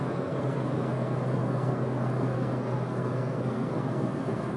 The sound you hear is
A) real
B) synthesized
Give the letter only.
B